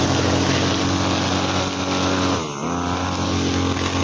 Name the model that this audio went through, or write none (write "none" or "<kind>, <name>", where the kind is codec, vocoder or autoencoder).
none